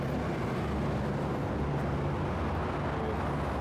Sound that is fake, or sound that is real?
real